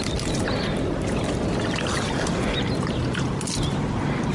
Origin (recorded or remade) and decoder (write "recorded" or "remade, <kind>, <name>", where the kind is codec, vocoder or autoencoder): recorded